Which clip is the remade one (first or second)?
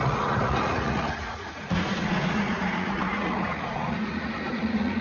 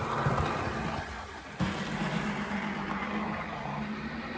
first